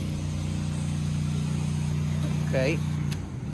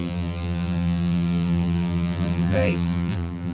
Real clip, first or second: first